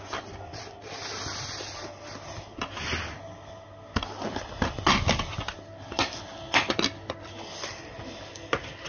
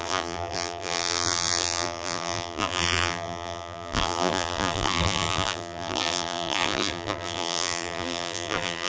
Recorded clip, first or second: first